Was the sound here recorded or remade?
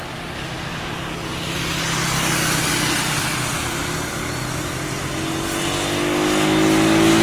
recorded